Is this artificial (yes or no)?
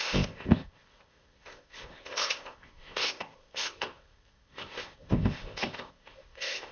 yes